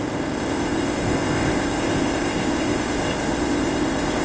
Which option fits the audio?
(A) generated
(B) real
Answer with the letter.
A